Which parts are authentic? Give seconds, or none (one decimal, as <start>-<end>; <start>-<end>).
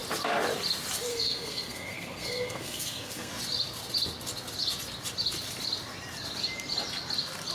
0.0-1.1; 3.3-7.5